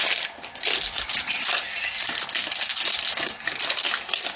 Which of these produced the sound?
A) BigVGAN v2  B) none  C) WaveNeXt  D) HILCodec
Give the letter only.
B